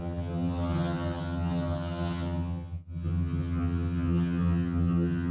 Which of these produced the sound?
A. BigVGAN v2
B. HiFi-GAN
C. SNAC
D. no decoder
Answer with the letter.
B